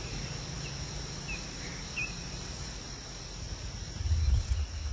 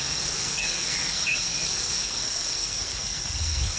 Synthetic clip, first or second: second